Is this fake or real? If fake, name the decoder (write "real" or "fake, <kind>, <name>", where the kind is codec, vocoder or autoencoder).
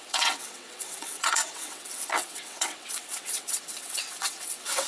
fake, vocoder, WaveNeXt